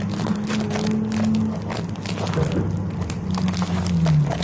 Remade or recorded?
recorded